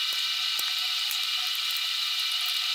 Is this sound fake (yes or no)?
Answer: yes